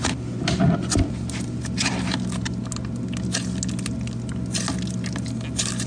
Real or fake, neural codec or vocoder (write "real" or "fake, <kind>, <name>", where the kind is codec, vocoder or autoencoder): real